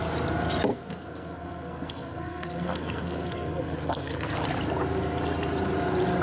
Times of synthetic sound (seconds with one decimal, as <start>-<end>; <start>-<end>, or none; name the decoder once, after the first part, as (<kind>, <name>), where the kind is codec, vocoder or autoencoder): 0.7-4.3 (codec, SNAC)